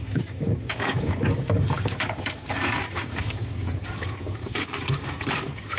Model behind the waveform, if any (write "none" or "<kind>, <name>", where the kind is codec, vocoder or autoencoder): codec, DAC